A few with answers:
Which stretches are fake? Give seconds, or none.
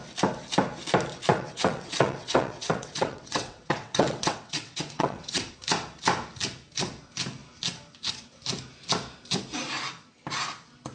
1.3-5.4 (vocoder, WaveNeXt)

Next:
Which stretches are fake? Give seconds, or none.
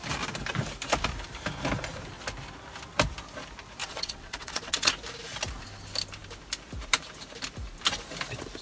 3.8-4.9 (vocoder, WaveNeXt)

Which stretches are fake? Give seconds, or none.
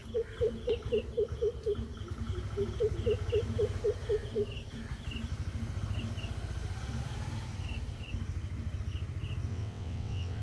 9.5-10.4 (vocoder, WaveNeXt)